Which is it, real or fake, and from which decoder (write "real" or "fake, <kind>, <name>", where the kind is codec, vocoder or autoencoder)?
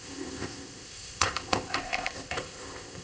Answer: fake, codec, ZipCodec